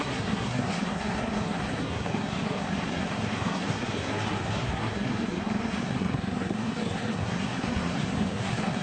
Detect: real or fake fake